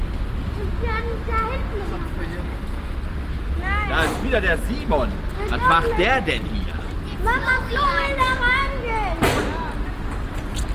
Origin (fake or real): real